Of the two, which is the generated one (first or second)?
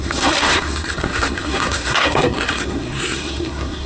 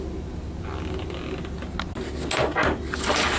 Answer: first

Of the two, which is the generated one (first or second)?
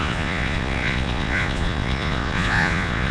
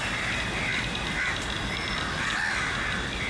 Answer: first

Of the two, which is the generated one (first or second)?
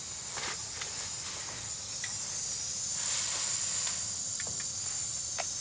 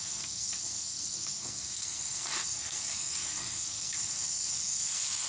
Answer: second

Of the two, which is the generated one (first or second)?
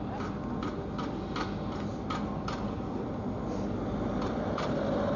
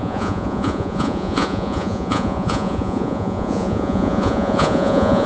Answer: second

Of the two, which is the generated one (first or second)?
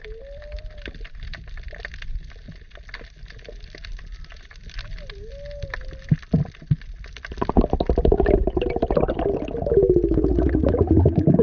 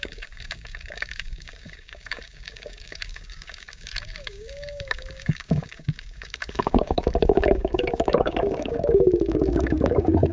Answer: second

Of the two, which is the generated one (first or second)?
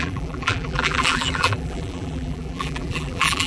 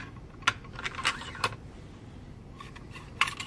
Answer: first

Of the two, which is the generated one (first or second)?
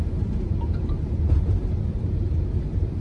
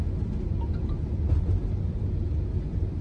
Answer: first